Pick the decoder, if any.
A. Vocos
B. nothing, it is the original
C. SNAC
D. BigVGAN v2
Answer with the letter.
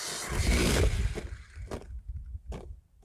B